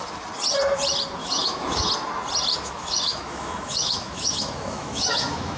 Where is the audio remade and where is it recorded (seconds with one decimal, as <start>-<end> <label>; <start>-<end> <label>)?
0.0-1.2 recorded; 1.2-1.9 remade; 1.9-2.5 recorded; 2.5-5.6 remade